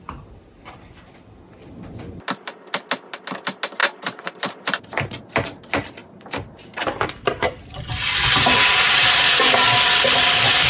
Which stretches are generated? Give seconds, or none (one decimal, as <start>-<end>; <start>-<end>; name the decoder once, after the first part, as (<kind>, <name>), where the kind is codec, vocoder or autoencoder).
3.8-5.2 (vocoder, BigVGAN v2); 6.0-7.5